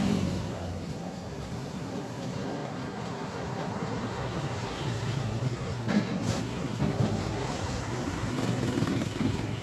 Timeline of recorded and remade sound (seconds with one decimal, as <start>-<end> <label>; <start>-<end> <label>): 0.0-9.6 remade

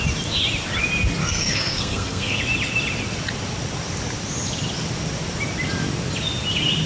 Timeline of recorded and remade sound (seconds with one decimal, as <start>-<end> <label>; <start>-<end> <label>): 0.0-1.2 recorded; 1.2-2.4 remade; 2.4-6.9 recorded

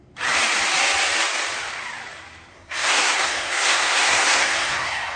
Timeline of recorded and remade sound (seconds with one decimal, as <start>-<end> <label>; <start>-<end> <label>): 0.0-2.5 recorded; 2.5-5.2 remade

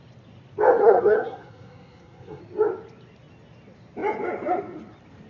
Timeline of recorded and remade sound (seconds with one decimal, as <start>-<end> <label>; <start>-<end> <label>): 0.0-0.8 recorded; 0.8-2.4 remade; 2.4-5.3 recorded

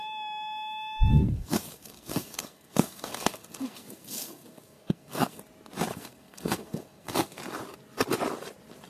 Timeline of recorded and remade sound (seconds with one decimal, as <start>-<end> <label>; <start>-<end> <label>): 0.0-1.1 recorded; 1.1-5.4 remade; 5.4-5.9 recorded; 5.9-7.4 remade; 7.4-8.9 recorded